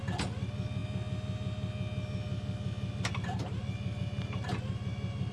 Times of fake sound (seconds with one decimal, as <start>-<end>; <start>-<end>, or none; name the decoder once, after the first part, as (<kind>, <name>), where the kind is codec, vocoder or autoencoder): none